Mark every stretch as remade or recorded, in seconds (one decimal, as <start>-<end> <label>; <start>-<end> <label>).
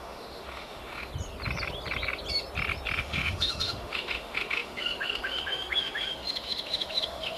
0.0-1.1 remade; 1.1-3.0 recorded; 3.0-7.4 remade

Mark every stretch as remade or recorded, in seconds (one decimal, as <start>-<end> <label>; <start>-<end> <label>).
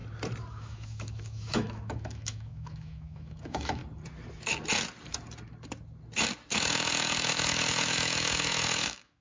0.0-0.5 recorded; 0.5-3.8 remade; 3.8-6.5 recorded; 6.5-9.2 remade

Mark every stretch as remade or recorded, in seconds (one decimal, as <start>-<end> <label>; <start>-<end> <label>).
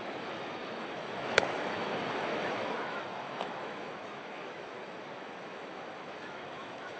0.0-7.0 remade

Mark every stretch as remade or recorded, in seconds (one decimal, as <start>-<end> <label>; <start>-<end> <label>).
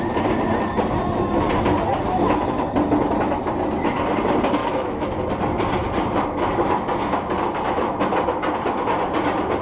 0.0-4.6 recorded; 4.6-5.1 remade; 5.1-9.6 recorded